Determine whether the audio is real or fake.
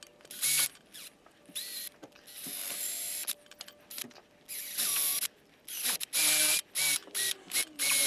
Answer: real